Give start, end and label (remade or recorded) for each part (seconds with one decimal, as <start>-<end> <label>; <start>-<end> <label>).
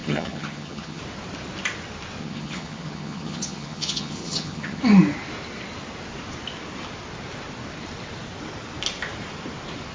0.0-1.0 remade; 1.0-2.2 recorded; 2.2-4.8 remade; 4.8-9.9 recorded